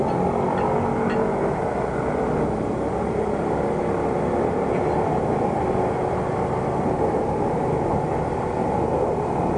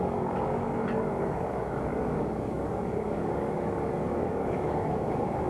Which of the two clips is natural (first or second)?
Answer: first